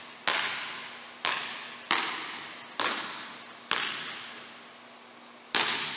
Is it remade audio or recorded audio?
recorded